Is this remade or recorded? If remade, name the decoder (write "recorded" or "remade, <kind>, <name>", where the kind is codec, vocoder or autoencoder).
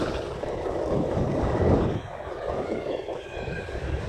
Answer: remade, codec, DAC